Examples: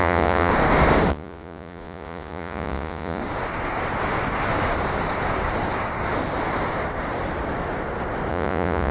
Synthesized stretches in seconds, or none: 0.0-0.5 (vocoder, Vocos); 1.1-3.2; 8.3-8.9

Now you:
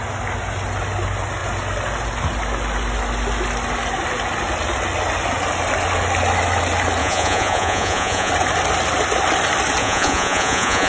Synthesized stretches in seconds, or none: 7.0-8.3 (vocoder, Vocos); 9.8-10.9

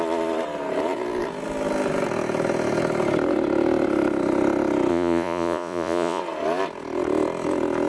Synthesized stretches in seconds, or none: 4.9-6.2 (vocoder, Vocos)

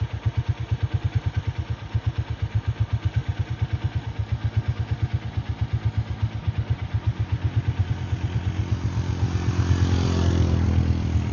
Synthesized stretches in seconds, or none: none